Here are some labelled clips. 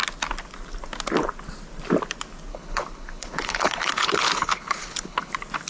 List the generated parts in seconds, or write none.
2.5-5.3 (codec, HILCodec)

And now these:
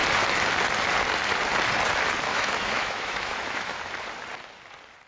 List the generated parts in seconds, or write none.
2.3-3.9 (autoencoder, DAC-VAE)

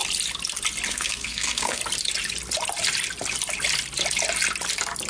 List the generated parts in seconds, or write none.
0.9-1.8 (codec, SNAC)

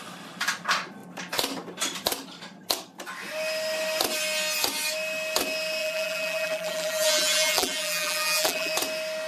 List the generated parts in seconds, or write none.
5.8-8.7 (vocoder, BigVGAN v2)

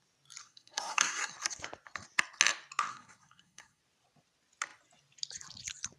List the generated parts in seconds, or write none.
0.4-1.3 (codec, SNAC); 2.9-3.8

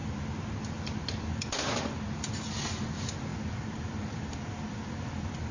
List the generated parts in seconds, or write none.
none

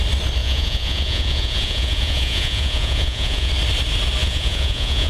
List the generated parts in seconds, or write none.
0.4-3.5 (vocoder, Vocos); 4.2-5.1